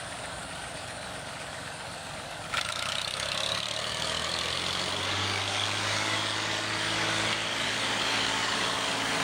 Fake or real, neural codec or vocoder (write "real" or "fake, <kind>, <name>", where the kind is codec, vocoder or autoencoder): fake, codec, DAC